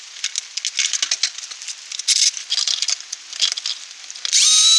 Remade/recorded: recorded